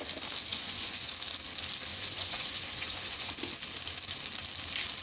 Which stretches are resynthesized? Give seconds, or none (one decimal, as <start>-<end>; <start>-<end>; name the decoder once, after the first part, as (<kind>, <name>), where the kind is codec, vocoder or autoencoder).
0.5-1.1 (vocoder, Vocos); 1.9-3.3